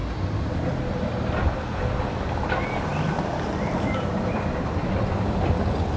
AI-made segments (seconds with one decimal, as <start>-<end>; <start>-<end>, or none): 2.9-4.8